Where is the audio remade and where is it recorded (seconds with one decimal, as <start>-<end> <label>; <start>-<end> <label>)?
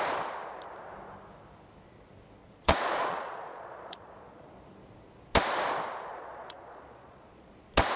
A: 0.0-2.4 recorded; 2.4-4.5 remade; 4.5-6.1 recorded; 6.1-7.5 remade; 7.5-8.0 recorded